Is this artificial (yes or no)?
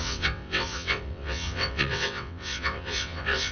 yes